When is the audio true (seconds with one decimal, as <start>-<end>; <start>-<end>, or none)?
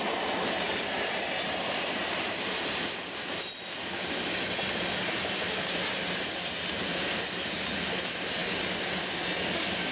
0.0-2.0; 3.0-9.9